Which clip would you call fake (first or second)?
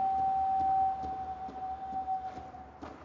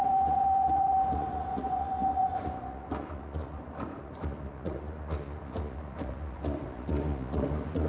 second